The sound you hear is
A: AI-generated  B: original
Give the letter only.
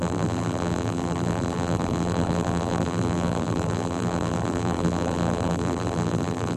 A